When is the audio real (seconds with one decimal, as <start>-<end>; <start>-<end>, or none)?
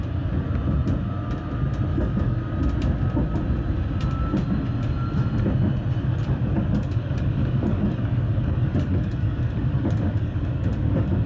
0.0-1.9; 2.4-6.0